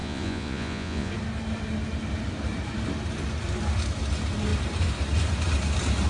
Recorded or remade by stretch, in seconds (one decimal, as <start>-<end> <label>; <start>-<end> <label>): 0.0-1.1 remade; 1.1-6.1 recorded